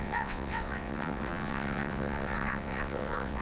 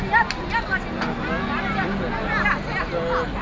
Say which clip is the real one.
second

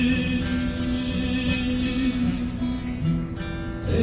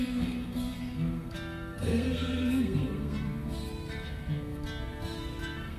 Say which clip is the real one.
first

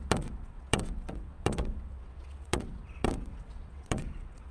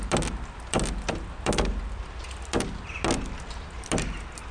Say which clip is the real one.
second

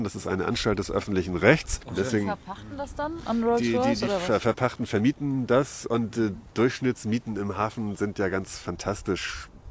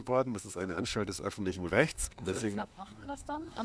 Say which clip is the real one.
first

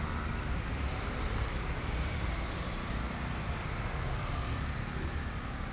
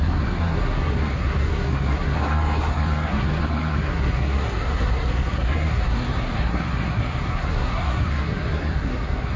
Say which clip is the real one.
first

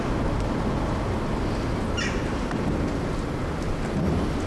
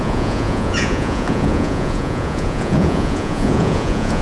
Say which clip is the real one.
first